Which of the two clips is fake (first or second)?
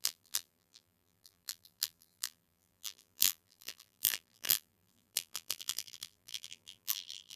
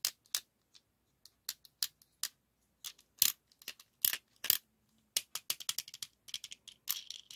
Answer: first